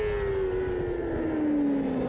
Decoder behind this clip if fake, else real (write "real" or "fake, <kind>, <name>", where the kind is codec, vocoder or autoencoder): real